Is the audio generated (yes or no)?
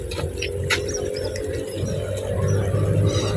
no